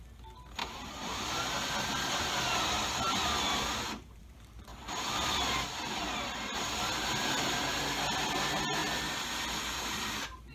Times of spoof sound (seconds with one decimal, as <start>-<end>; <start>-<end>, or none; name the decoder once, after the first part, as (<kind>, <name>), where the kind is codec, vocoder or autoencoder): 0.6-4.2 (vocoder, BigVGAN v2); 4.7-6.0; 8.8-9.6